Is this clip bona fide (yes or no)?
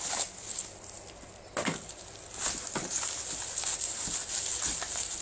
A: yes